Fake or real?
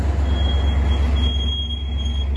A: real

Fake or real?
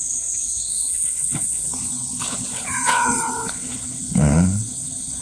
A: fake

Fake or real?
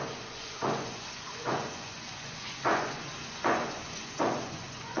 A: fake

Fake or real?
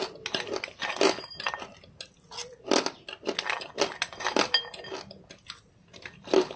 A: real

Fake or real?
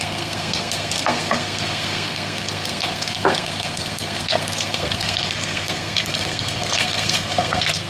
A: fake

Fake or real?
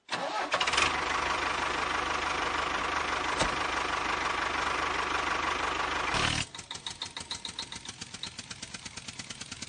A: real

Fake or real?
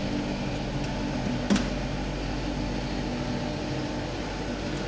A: real